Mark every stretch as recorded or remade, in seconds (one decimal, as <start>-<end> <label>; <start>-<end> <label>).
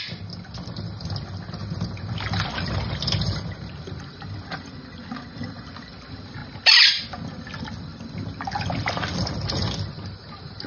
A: 0.0-10.7 recorded